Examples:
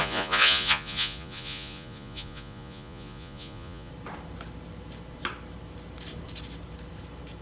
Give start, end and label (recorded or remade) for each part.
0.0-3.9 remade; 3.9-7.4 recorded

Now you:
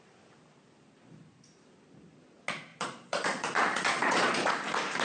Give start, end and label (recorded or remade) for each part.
0.0-2.7 recorded; 2.7-4.5 remade; 4.5-5.0 recorded

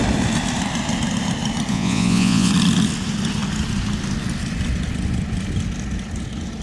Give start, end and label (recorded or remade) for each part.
0.0-1.7 recorded; 1.7-2.5 remade; 2.5-6.6 recorded

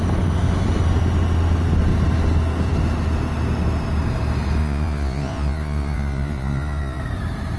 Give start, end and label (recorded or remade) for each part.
0.0-4.6 recorded; 4.6-7.0 remade; 7.0-7.6 recorded

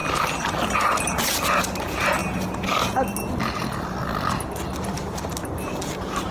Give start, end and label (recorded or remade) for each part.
0.0-6.3 recorded

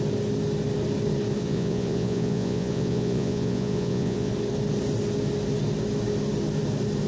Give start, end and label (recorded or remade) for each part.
0.0-1.4 recorded; 1.4-4.3 remade; 4.3-7.1 recorded